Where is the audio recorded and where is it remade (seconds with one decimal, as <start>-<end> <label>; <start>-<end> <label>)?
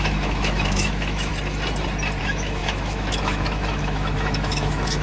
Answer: 0.0-1.3 remade; 1.3-2.2 recorded; 2.2-5.0 remade